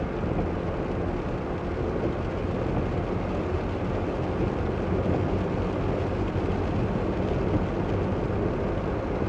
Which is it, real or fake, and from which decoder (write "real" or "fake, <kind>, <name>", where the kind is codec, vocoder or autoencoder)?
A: real